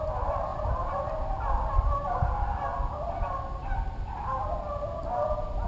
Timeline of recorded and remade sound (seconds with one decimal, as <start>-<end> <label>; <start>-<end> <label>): 0.0-0.5 recorded; 0.5-1.1 remade; 1.1-5.7 recorded